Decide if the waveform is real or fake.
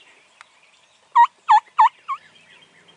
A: real